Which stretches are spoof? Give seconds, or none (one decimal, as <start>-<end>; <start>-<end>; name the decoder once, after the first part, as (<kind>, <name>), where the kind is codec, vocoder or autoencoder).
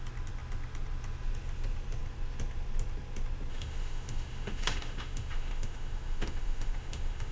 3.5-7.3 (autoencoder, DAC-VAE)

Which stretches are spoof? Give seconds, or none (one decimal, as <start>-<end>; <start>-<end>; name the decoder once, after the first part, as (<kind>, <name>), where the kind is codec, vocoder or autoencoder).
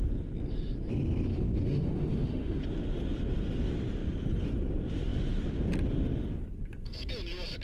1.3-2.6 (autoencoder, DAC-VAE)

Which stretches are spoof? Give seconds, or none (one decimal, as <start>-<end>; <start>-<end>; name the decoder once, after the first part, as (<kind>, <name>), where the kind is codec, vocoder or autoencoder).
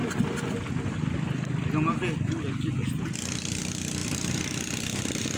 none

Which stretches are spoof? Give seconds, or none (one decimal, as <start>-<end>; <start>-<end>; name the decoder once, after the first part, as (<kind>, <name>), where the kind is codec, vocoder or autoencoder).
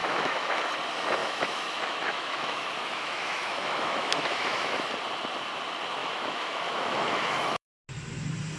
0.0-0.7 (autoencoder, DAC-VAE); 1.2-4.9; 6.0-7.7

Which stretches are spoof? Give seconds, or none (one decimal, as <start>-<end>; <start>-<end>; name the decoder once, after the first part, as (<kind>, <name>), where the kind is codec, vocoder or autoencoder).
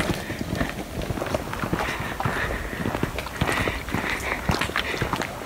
none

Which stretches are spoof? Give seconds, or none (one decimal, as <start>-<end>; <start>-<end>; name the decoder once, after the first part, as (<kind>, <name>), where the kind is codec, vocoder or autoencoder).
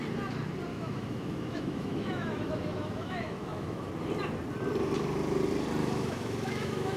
0.7-3.9 (autoencoder, DAC-VAE); 5.8-7.0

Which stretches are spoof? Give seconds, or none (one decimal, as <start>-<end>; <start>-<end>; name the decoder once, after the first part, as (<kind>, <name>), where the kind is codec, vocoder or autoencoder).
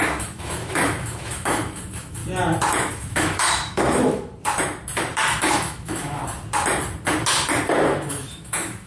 0.0-2.2 (autoencoder, DAC-VAE); 2.9-4.3; 5.3-6.2; 8.1-8.9